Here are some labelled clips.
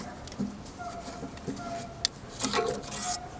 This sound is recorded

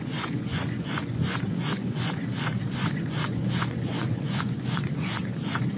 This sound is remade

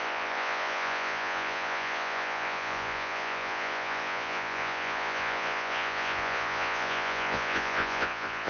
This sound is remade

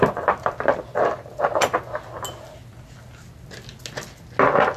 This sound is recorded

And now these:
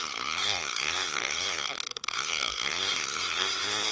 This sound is remade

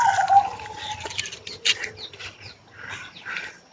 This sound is recorded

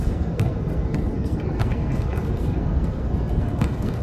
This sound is remade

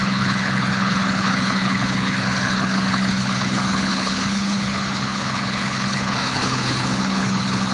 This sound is remade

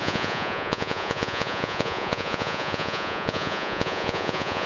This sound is remade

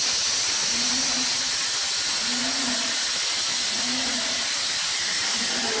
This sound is recorded